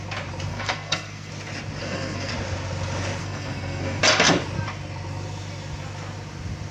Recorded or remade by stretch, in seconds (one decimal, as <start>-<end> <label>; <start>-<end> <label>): 0.0-0.5 recorded; 0.5-1.3 remade; 1.3-1.8 recorded; 1.8-2.3 remade; 2.3-3.2 recorded; 3.2-4.0 remade; 4.0-6.7 recorded